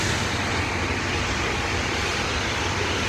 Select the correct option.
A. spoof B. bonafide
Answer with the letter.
B